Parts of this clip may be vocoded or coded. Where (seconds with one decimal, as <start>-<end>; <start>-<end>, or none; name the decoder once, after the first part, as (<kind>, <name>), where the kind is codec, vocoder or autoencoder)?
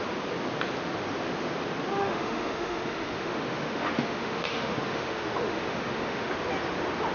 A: 2.0-6.3 (autoencoder, DAC-VAE)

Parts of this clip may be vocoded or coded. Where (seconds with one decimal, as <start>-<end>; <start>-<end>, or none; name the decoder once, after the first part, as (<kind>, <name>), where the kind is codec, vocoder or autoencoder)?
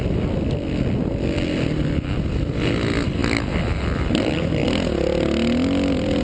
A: none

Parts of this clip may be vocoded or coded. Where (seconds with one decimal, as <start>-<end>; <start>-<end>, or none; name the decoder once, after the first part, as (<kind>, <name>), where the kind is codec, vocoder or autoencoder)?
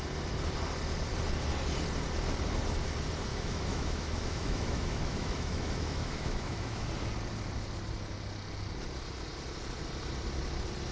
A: 3.3-6.9 (autoencoder, DAC-VAE)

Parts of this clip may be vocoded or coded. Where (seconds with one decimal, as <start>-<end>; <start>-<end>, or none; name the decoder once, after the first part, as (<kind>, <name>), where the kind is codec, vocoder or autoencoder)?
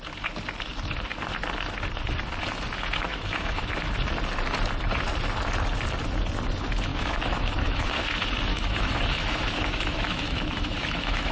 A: 3.1-3.7 (autoencoder, DAC-VAE); 6.9-7.9; 8.5-11.3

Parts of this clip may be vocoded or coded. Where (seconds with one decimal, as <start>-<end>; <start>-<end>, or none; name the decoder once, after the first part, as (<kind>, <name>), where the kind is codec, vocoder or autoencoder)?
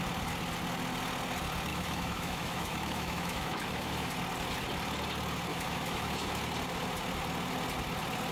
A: 1.7-4.1 (autoencoder, DAC-VAE); 5.5-6.4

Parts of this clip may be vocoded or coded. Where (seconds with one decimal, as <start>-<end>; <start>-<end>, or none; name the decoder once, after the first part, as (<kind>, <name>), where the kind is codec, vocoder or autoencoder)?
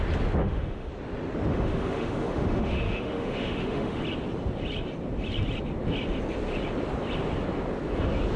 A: 0.4-0.9 (autoencoder, DAC-VAE); 1.5-4.0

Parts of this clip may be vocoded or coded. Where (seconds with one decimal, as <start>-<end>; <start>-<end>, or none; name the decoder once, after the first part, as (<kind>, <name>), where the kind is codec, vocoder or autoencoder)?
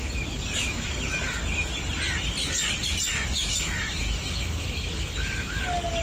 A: 0.6-1.2 (autoencoder, DAC-VAE); 3.1-5.6